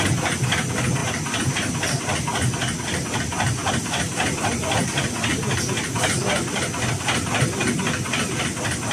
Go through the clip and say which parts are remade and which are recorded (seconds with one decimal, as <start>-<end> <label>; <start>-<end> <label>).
0.0-8.9 recorded